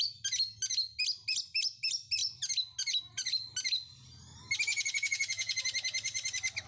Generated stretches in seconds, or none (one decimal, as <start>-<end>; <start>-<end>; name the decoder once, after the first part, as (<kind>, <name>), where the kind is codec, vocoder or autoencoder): 4.7-5.6 (vocoder, Vocos)